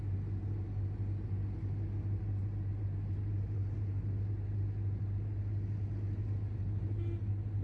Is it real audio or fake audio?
real